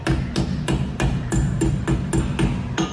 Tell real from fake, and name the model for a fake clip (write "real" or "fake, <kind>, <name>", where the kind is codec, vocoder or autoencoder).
real